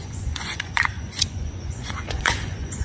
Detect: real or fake fake